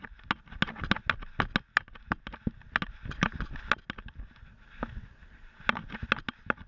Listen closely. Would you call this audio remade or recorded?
recorded